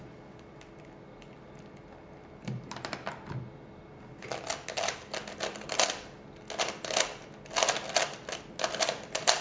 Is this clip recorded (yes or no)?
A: yes